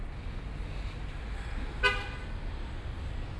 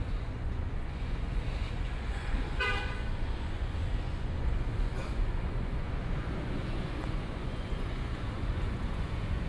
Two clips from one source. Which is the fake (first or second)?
second